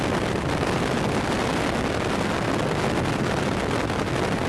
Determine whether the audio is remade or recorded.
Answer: recorded